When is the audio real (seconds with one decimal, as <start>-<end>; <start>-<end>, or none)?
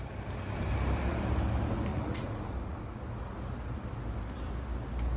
0.0-1.9; 3.0-5.2